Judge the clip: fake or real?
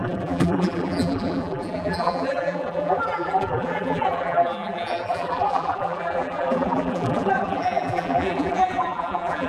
fake